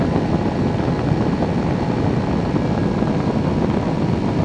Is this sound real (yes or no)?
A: yes